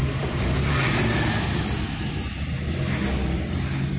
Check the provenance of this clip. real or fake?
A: real